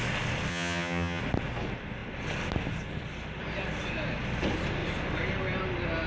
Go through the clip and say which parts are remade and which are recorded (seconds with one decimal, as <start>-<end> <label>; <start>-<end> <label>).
0.0-0.5 recorded; 0.5-1.2 remade; 1.2-6.1 recorded